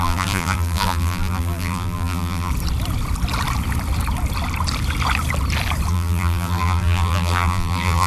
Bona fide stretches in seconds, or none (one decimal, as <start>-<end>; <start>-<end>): 2.5-5.9